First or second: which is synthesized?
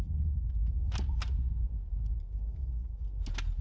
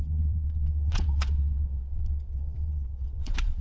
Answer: second